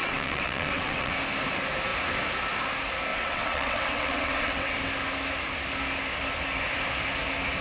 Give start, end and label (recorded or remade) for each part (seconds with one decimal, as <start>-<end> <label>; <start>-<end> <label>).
0.0-1.1 remade; 1.1-3.1 recorded; 3.1-4.7 remade; 4.7-7.6 recorded